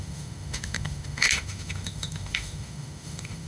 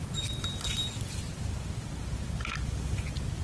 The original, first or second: second